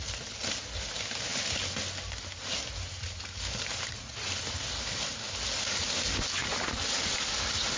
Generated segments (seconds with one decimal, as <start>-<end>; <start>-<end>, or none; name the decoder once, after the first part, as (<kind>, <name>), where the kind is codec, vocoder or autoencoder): none